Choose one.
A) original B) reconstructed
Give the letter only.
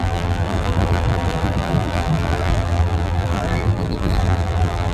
B